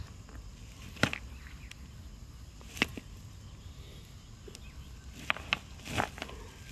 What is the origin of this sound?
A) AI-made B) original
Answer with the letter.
B